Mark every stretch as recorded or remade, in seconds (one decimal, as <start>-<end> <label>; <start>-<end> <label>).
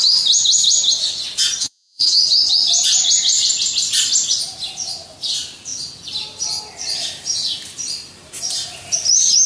0.0-1.6 recorded; 1.6-2.2 remade; 2.2-9.5 recorded